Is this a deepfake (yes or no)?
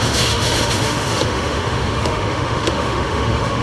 yes